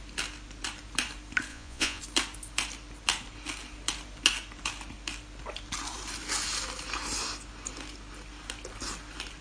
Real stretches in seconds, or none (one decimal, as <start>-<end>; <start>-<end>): 0.0-1.5; 2.0-9.4